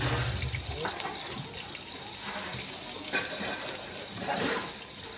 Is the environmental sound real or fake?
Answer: real